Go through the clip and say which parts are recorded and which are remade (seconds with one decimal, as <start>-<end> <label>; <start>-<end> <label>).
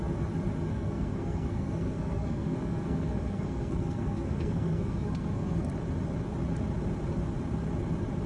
0.0-0.7 recorded; 0.7-5.7 remade; 5.7-8.3 recorded